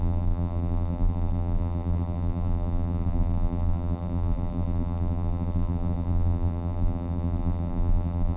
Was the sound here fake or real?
fake